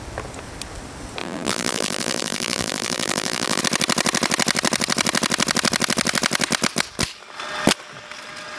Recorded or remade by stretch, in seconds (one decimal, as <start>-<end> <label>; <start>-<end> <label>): 0.0-1.2 recorded; 1.2-3.6 remade; 3.6-8.6 recorded